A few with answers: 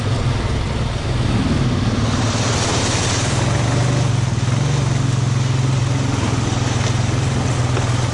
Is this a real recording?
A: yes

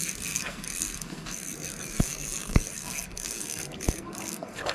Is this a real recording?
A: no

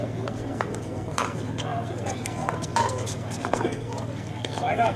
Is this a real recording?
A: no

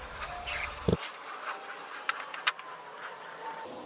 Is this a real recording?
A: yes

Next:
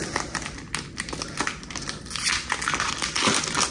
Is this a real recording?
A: yes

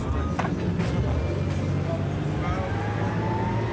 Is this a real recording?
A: yes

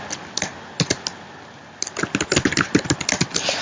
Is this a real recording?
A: yes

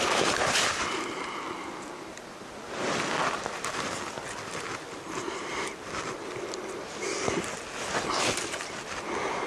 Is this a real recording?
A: yes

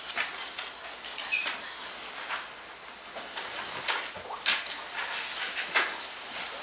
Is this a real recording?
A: yes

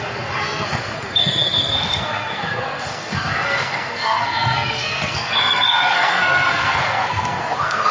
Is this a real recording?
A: no